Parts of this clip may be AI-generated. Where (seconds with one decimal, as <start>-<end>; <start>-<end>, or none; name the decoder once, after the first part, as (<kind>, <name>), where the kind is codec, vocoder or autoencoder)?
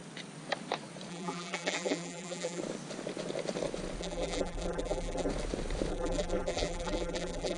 1.1-2.6 (vocoder, BigVGAN v2); 4.0-5.3; 5.9-7.6